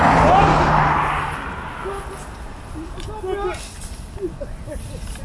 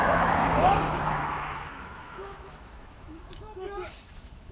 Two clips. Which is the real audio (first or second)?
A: first